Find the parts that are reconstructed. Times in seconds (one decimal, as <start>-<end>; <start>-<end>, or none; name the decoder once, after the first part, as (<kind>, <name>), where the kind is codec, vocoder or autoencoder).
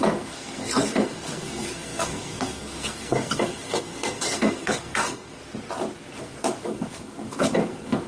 0.0-5.4 (codec, SNAC); 6.2-8.1